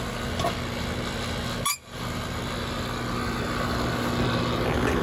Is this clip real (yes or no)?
yes